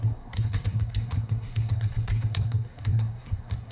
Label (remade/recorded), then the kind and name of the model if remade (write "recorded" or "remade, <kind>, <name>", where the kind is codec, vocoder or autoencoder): remade, codec, SNAC